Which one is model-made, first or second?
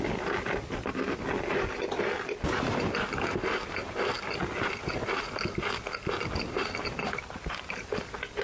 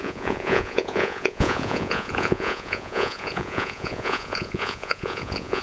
second